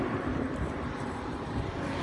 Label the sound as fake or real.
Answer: fake